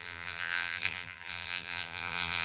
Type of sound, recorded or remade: remade